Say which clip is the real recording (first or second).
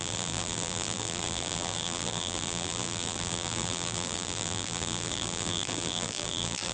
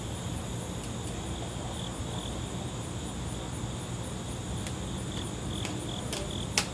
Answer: second